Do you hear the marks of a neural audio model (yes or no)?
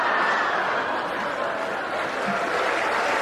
no